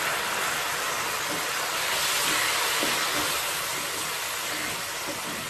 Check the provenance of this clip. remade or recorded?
recorded